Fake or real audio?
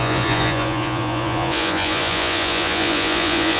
fake